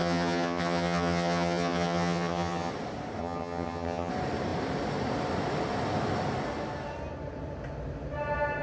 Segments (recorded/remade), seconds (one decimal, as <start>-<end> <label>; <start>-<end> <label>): 0.0-2.7 remade; 2.7-3.2 recorded; 3.2-4.1 remade; 4.1-8.6 recorded